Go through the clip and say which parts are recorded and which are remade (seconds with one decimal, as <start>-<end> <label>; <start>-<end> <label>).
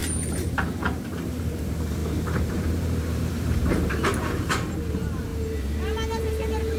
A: 0.0-6.8 remade